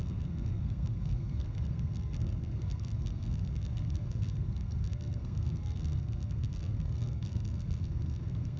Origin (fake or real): fake